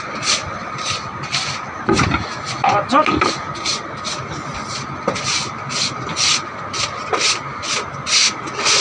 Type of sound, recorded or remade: recorded